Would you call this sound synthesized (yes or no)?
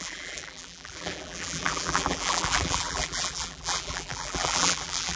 yes